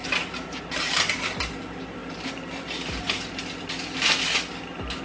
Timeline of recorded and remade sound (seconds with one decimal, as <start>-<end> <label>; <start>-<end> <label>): 0.0-1.1 remade; 1.1-2.0 recorded; 2.0-3.4 remade; 3.4-5.0 recorded